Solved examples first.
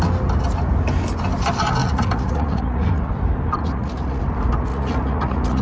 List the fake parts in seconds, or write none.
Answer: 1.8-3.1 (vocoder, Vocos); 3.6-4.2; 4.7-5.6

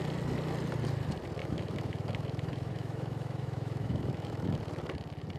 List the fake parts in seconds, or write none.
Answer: 1.4-4.6 (autoencoder, DAC-VAE)

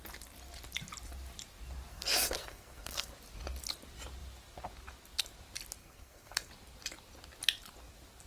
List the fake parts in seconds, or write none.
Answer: 1.9-3.1 (codec, SNAC); 5.8-6.5